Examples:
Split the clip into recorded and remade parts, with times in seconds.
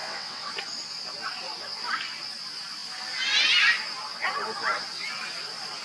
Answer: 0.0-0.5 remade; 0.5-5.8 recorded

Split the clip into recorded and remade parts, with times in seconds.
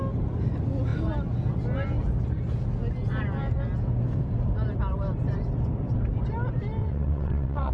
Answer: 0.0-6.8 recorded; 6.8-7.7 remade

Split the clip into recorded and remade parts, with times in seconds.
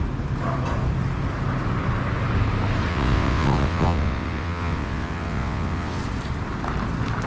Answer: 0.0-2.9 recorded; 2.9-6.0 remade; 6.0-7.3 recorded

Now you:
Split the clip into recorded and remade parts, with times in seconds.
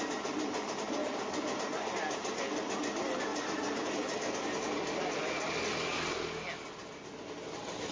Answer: 0.0-7.9 recorded